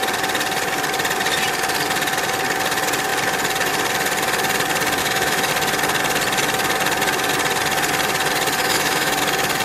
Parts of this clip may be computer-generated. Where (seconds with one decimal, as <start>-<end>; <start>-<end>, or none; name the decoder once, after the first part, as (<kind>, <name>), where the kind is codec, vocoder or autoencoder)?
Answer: 5.0-5.5 (autoencoder, DAC-VAE); 8.6-9.1